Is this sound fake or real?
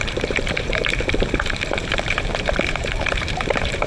fake